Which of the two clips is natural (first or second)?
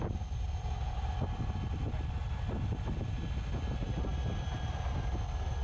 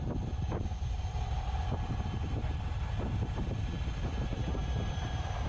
first